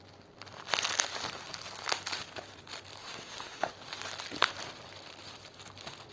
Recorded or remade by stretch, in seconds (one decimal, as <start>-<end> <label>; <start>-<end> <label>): 0.0-3.0 recorded; 3.0-3.7 remade; 3.7-6.1 recorded